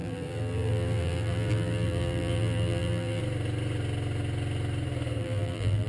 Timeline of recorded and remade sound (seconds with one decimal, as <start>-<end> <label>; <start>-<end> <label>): 0.0-3.2 remade; 3.2-5.2 recorded; 5.2-5.9 remade